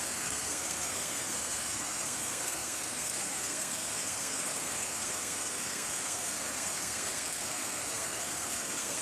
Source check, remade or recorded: remade